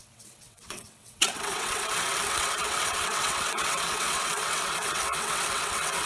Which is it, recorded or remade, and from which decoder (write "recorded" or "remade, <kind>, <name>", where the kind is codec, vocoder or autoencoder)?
remade, vocoder, WaveNeXt